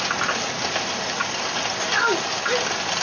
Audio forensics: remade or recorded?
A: recorded